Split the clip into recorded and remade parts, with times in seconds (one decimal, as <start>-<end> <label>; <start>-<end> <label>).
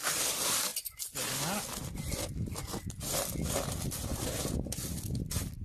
0.0-5.6 recorded